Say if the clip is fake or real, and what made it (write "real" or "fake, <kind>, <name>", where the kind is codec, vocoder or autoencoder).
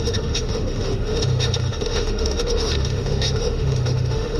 fake, autoencoder, DAC-VAE